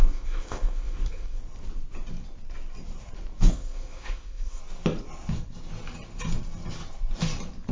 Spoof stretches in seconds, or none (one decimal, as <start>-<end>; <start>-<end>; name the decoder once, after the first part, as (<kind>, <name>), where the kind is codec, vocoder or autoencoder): 0.0-1.4 (codec, ZipCodec); 3.5-4.6